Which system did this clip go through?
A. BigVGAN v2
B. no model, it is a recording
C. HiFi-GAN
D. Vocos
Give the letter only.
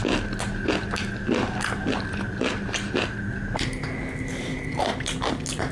B